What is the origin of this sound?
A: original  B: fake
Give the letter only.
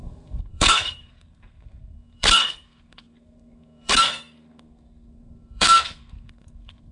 B